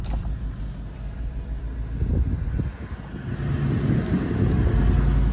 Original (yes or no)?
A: yes